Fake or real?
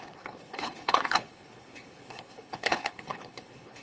fake